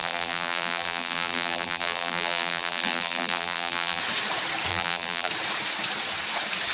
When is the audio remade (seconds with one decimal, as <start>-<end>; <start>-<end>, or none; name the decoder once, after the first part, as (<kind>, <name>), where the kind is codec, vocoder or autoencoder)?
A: 0.0-4.0 (vocoder, BigVGAN v2); 4.7-5.3